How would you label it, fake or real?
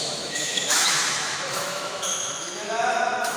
fake